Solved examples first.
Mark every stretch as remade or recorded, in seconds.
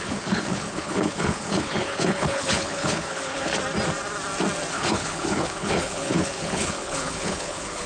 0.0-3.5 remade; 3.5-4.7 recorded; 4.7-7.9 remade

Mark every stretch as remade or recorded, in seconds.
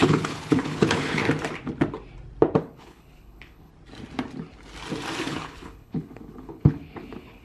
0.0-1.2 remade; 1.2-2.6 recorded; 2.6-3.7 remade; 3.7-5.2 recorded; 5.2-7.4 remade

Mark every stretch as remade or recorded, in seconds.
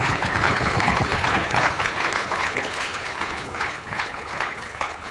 0.0-5.1 remade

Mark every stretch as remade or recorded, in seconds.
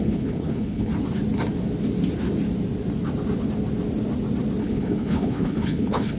0.0-0.9 remade; 0.9-4.6 recorded; 4.6-6.2 remade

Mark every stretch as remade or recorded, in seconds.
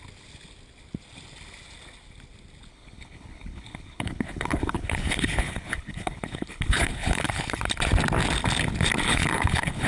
0.0-2.7 recorded; 2.7-7.6 remade; 7.6-9.1 recorded; 9.1-9.9 remade